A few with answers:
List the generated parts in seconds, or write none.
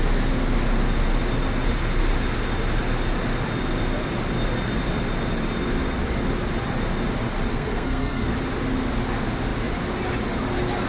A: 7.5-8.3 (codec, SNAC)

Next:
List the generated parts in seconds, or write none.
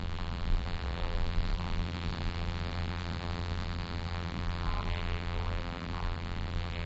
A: 0.0-6.9 (vocoder, BigVGAN v2)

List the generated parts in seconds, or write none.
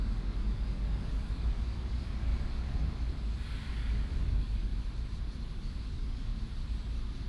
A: 0.0-2.3 (codec, DAC); 3.7-4.7; 5.5-6.3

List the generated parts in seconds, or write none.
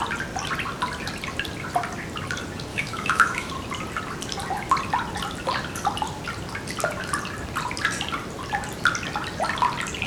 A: 2.7-3.5 (autoencoder, DAC-VAE)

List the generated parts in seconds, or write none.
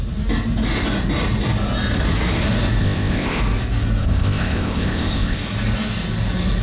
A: 2.8-3.4 (codec, ZipCodec); 4.0-5.4